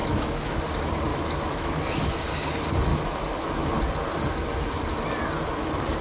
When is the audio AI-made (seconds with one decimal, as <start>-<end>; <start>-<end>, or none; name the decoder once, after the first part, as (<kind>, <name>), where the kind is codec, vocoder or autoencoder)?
0.0-0.6 (autoencoder, DAC-VAE); 1.1-2.1; 2.9-3.7